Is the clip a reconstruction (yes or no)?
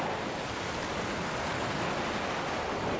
no